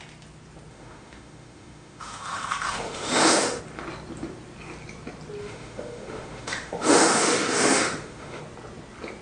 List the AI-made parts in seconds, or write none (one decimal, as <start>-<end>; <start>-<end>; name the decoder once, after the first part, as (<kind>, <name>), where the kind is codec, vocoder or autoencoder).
0.7-3.6 (autoencoder, DAC-VAE); 5.4-8.4